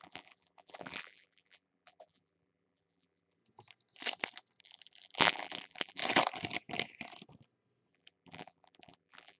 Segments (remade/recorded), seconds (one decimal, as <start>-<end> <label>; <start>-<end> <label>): 0.0-3.4 remade; 3.4-4.6 recorded; 4.6-6.0 remade; 6.0-7.9 recorded; 7.9-9.4 remade